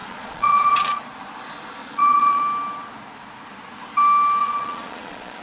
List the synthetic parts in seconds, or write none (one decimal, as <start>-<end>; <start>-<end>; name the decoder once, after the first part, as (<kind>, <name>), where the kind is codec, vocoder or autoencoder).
0.0-1.0 (vocoder, Vocos); 1.8-2.4; 4.4-5.4